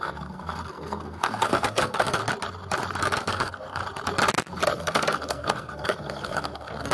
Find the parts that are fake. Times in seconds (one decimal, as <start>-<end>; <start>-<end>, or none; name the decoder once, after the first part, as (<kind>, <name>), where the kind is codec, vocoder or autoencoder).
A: 0.0-2.2 (codec, SNAC); 3.0-3.8; 4.8-6.9